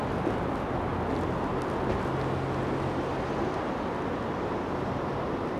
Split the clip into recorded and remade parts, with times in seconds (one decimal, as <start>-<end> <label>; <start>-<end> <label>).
0.0-0.9 remade; 0.9-4.3 recorded; 4.3-5.6 remade

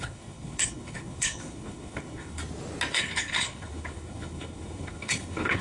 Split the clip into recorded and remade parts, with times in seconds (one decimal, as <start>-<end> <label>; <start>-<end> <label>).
0.0-2.4 remade; 2.4-2.9 recorded; 2.9-5.6 remade

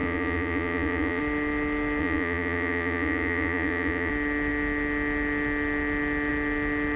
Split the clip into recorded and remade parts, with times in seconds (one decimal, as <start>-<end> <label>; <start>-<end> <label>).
0.0-1.2 remade; 1.2-2.0 recorded; 2.0-4.1 remade; 4.1-7.0 recorded

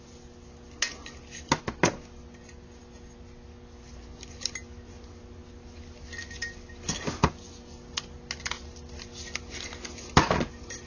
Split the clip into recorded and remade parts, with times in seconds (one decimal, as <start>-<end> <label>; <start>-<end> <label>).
0.0-10.9 recorded

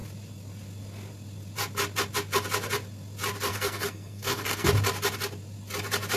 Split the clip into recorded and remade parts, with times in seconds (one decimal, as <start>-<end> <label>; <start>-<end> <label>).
0.0-3.5 recorded; 3.5-4.7 remade; 4.7-6.2 recorded

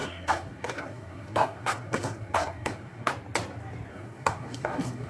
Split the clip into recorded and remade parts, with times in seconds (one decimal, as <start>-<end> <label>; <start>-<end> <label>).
0.0-3.1 remade; 3.1-3.9 recorded; 3.9-5.1 remade